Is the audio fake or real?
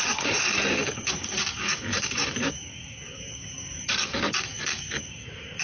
fake